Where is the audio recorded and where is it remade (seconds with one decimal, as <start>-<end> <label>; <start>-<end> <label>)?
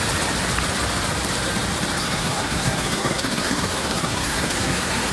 0.0-2.0 recorded; 2.0-5.1 remade